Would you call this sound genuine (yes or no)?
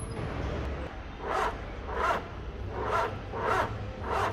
yes